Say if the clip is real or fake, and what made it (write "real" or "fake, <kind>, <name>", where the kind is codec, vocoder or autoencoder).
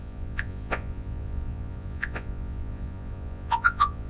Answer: fake, vocoder, Vocos